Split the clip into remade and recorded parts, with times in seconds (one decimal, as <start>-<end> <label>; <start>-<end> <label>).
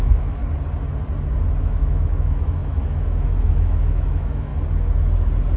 0.0-0.4 remade; 0.4-1.6 recorded; 1.6-4.5 remade; 4.5-5.6 recorded